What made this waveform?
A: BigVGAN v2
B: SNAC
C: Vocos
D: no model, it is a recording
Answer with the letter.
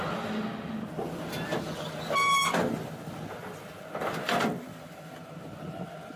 D